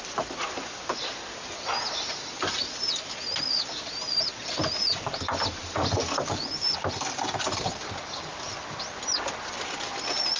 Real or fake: real